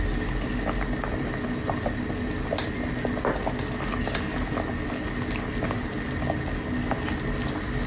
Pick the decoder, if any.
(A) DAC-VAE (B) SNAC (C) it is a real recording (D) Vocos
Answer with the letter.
C